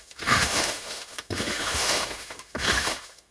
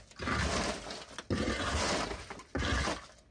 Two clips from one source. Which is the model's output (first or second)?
first